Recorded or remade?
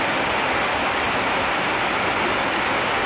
recorded